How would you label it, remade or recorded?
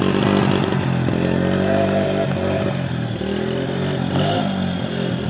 recorded